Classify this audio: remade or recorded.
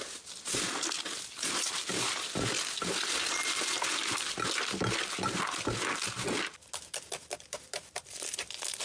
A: recorded